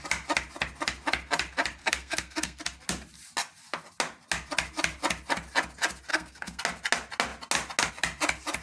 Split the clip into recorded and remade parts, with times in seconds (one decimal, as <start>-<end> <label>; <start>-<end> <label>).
0.0-1.8 recorded; 1.8-2.6 remade; 2.6-6.1 recorded; 6.1-6.6 remade; 6.6-8.6 recorded